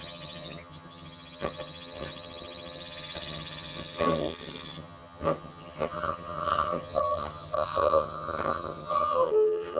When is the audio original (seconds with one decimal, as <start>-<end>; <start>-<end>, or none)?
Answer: none